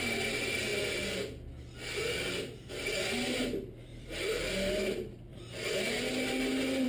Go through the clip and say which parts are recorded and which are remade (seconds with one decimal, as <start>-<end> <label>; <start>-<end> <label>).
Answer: 0.0-3.9 recorded; 3.9-4.5 remade; 4.5-5.3 recorded; 5.3-5.8 remade; 5.8-6.9 recorded